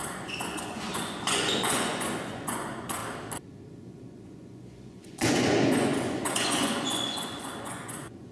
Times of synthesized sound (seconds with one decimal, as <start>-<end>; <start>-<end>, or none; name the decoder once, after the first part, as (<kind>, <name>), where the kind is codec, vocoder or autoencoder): 0.0-3.0 (vocoder, Vocos); 3.7-8.3